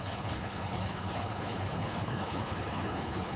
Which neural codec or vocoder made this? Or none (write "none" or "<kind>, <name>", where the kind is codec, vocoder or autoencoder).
codec, HILCodec